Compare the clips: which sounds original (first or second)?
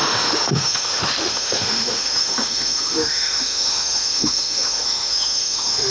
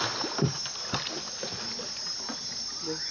second